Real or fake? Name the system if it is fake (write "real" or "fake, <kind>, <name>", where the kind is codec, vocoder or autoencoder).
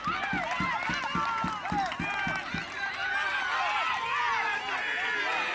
real